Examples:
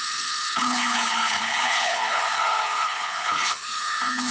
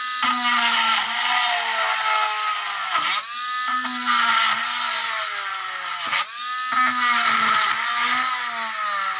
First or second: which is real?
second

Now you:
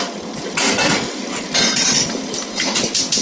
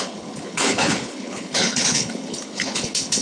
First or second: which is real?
first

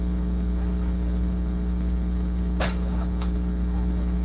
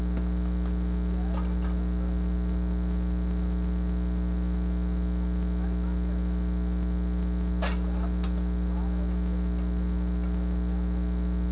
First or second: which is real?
second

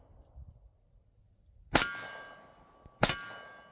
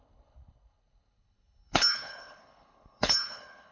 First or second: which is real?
first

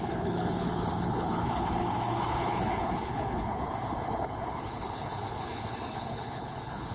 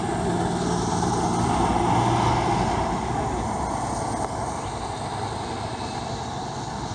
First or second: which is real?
second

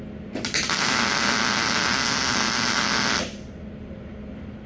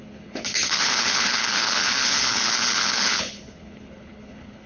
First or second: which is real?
first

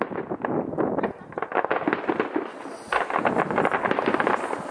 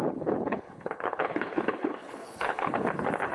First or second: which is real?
first